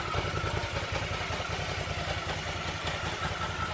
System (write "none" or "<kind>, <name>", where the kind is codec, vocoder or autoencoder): none